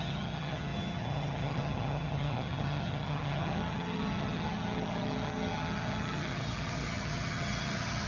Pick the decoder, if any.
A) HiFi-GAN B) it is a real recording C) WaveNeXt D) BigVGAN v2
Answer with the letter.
A